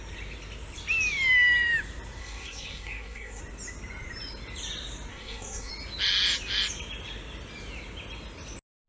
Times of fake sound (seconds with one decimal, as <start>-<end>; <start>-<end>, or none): 2.2-3.4; 5.1-5.7